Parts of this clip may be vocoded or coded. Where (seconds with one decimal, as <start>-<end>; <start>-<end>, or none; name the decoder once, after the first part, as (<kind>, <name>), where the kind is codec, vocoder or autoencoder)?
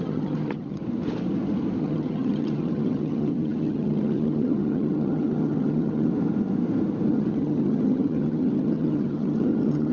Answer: 0.0-0.8 (vocoder, HiFi-GAN); 1.8-6.1; 7.1-9.9